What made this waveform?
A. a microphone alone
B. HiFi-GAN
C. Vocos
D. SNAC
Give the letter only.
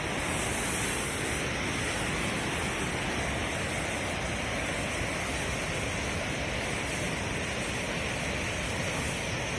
A